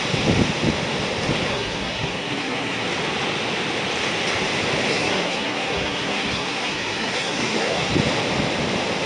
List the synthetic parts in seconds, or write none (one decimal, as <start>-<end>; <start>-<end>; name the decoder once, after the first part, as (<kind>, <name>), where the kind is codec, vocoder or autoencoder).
1.5-2.9 (codec, SNAC); 4.9-7.9